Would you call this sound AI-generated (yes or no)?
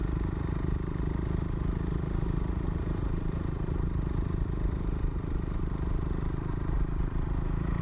yes